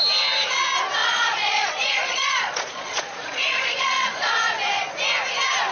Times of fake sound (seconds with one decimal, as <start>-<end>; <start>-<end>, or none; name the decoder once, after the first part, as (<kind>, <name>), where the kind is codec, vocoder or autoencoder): 1.0-4.4 (vocoder, Vocos)